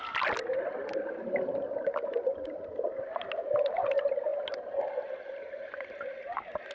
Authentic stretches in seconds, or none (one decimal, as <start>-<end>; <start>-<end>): 0.0-6.7